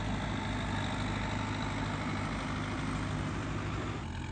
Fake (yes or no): no